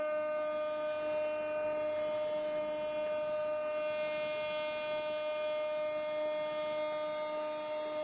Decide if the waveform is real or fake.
real